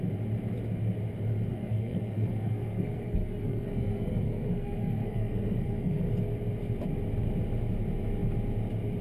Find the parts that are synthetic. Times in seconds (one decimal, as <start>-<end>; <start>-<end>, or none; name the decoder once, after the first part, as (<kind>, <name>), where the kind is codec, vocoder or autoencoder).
1.5-6.0 (codec, SNAC)